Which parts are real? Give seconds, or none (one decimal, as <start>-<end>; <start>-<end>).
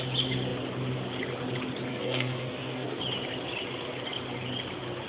0.0-1.9; 3.0-5.1